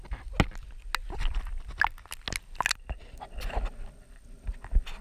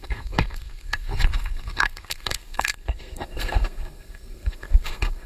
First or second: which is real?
first